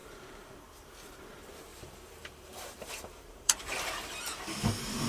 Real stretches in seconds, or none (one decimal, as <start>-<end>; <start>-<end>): 0.5-1.7; 4.1-5.1